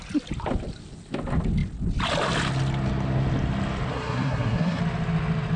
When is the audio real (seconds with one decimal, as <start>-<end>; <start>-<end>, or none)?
0.0-3.9; 4.8-5.6